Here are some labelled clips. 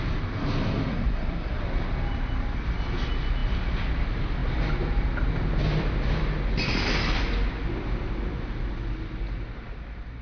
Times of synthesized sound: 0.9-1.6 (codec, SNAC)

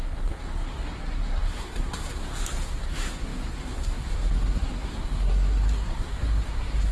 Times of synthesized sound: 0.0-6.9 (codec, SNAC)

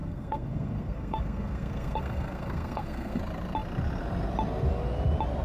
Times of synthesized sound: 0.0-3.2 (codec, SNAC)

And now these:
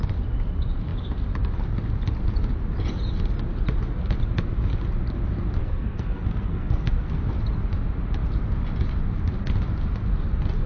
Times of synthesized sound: 5.6-7.2 (codec, SNAC)

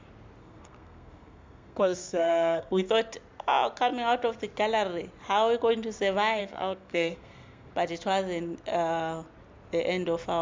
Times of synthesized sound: 0.4-2.9 (codec, SNAC); 6.4-7.7

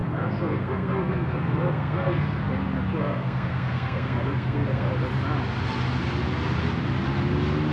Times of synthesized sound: 0.0-2.4 (codec, SNAC); 3.0-4.9